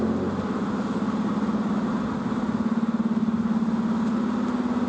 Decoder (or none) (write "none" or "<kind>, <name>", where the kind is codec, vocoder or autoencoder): none